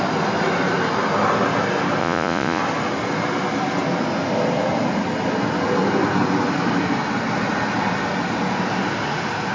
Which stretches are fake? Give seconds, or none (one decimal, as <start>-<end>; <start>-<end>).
2.0-2.6